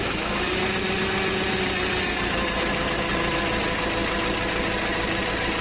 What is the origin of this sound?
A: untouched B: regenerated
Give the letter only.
A